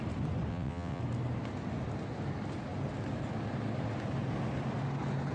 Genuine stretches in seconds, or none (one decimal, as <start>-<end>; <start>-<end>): 0.0-0.5; 1.0-5.3